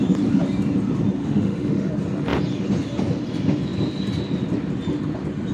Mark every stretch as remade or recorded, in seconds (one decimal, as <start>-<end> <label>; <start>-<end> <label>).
0.0-1.2 recorded; 1.2-1.9 remade; 1.9-5.5 recorded